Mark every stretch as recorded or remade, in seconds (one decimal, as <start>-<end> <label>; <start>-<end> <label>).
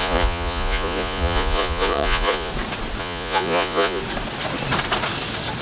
0.0-2.5 remade; 2.5-3.0 recorded; 3.0-4.0 remade; 4.0-5.6 recorded